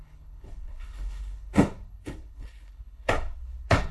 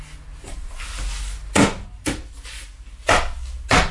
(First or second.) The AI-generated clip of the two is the first